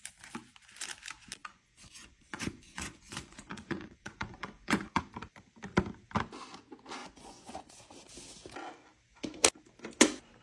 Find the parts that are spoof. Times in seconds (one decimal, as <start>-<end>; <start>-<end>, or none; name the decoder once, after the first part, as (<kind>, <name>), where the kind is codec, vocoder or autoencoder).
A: 1.4-5.0 (vocoder, Vocos); 7.0-7.7

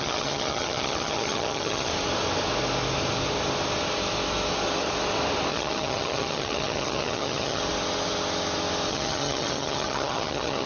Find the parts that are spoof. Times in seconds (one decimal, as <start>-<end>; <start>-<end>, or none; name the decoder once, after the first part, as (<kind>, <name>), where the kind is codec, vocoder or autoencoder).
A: 0.0-1.9 (vocoder, HiFi-GAN); 5.5-7.6; 8.9-10.7

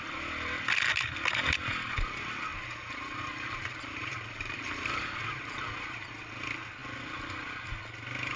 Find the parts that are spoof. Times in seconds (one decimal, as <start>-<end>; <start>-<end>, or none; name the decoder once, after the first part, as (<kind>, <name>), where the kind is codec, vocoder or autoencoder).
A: 2.5-6.1 (vocoder, BigVGAN v2)

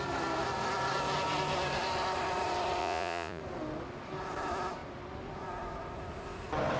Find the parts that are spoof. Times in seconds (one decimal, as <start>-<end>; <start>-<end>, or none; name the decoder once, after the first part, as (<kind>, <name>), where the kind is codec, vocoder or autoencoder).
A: 2.8-3.4 (vocoder, Vocos)

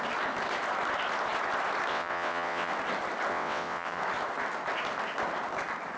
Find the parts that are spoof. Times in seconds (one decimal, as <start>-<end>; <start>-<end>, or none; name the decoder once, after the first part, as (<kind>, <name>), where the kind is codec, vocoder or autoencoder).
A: 1.9-2.7 (vocoder, WaveNeXt); 3.3-4.0

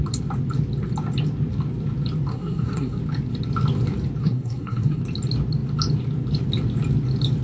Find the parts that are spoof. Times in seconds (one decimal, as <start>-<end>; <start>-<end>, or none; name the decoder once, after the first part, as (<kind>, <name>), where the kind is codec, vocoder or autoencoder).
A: 2.3-3.0 (codec, SNAC); 4.2-5.0

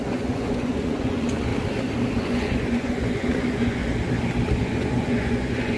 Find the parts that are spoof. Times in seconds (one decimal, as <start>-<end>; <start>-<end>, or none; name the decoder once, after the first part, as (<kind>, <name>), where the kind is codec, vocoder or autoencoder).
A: 0.0-1.5 (vocoder, Vocos); 2.2-3.8; 4.6-5.8